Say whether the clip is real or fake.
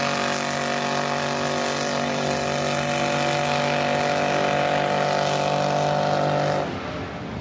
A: real